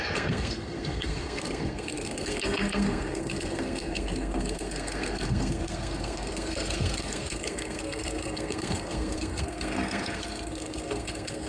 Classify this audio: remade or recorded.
remade